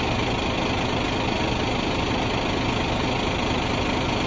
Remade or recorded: recorded